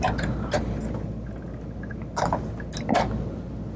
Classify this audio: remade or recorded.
recorded